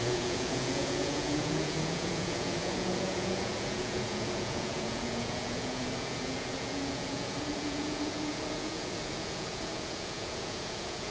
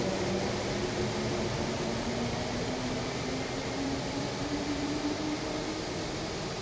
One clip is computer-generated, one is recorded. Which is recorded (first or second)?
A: second